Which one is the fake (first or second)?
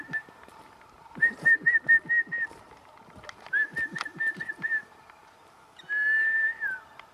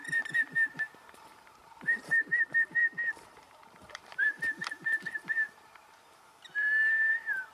second